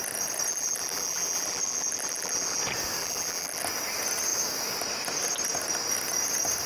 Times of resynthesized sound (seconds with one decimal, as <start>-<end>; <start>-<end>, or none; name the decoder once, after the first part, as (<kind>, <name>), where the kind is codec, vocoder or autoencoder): 0.5-2.6 (vocoder, BigVGAN v2); 3.0-3.6